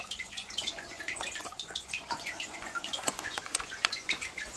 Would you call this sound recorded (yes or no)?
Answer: no